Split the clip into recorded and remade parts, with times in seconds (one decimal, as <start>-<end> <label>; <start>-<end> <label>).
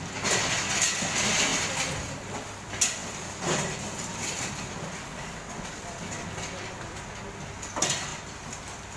0.0-3.0 recorded; 3.0-4.7 remade; 4.7-8.1 recorded; 8.1-9.0 remade